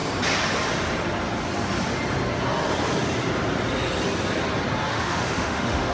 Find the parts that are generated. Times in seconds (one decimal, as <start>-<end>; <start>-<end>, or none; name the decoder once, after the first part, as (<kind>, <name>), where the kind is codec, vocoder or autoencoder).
4.9-5.9 (autoencoder, DAC-VAE)